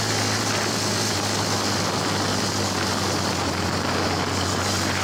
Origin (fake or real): real